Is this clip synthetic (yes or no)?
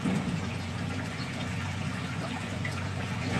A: yes